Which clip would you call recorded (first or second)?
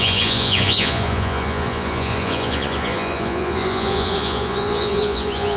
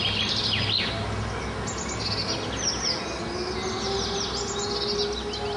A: second